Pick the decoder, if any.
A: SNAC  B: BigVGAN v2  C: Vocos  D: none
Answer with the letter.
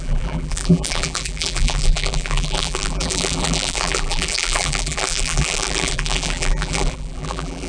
B